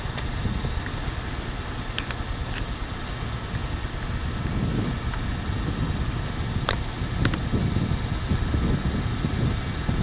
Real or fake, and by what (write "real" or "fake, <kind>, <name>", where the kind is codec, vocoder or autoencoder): real